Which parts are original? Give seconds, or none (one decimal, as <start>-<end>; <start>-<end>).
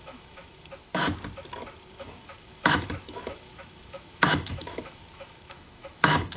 0.9-1.9